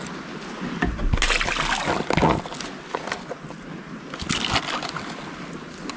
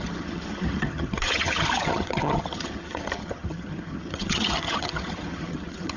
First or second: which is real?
first